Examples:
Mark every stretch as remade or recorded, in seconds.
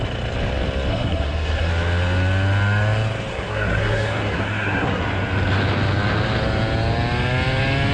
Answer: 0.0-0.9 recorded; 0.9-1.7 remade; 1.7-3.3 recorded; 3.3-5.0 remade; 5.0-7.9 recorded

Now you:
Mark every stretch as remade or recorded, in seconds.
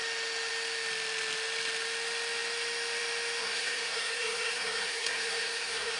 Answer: 0.0-3.4 recorded; 3.4-6.0 remade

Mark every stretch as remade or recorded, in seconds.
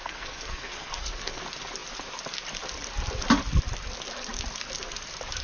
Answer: 0.0-1.4 remade; 1.4-5.4 recorded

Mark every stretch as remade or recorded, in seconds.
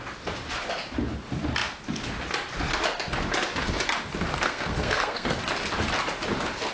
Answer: 0.0-4.3 recorded; 4.3-5.4 remade; 5.4-6.7 recorded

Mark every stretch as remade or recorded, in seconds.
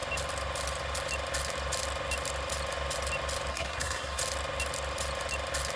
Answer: 0.0-3.5 recorded; 3.5-4.2 remade; 4.2-5.8 recorded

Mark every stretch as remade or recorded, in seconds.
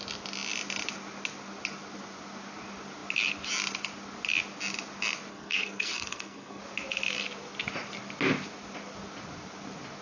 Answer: 0.0-5.3 recorded; 5.3-6.6 remade; 6.6-10.0 recorded